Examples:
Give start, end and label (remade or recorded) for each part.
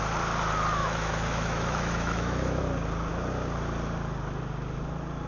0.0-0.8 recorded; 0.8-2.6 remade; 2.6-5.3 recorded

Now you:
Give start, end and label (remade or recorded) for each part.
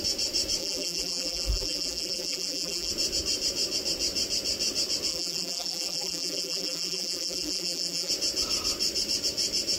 0.0-0.6 recorded; 0.6-2.9 remade; 2.9-5.1 recorded; 5.1-8.1 remade; 8.1-9.8 recorded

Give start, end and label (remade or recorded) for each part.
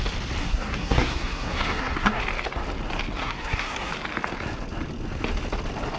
0.0-0.4 recorded; 0.4-2.2 remade; 2.2-3.2 recorded; 3.2-3.9 remade; 3.9-6.0 recorded